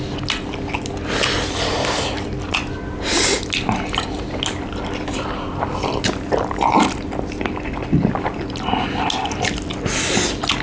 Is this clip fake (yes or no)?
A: no